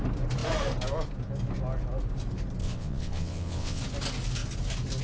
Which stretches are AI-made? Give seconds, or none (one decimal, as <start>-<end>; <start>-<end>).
2.6-3.8